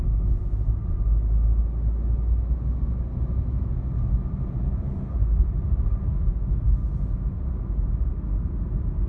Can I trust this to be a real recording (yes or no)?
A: yes